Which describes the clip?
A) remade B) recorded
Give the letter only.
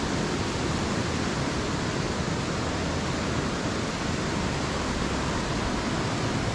B